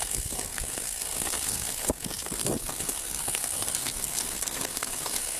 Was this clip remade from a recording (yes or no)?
yes